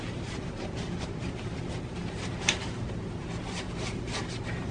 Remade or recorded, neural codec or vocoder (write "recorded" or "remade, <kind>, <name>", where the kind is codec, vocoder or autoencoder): remade, vocoder, BigVGAN v2